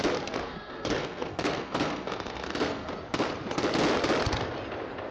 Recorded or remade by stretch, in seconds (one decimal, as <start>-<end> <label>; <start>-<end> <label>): 0.0-0.4 recorded; 0.4-2.9 remade; 2.9-5.1 recorded